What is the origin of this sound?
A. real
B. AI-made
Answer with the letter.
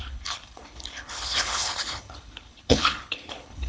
B